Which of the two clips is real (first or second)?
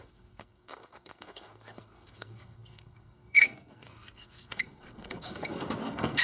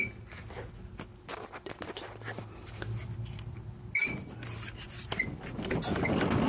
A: second